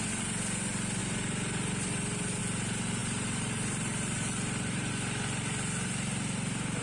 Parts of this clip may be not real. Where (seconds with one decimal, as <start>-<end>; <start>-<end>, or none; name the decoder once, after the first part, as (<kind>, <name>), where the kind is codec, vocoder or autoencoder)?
1.0-2.4 (vocoder, BigVGAN v2); 3.0-4.9